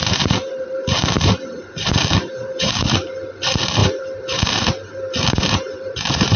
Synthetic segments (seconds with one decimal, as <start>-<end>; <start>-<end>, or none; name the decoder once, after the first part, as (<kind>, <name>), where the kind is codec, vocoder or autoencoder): 0.0-2.7 (vocoder, BigVGAN v2); 3.8-6.4